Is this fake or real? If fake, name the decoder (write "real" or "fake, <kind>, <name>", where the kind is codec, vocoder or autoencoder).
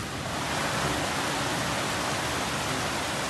real